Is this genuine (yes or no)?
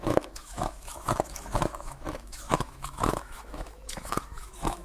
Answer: no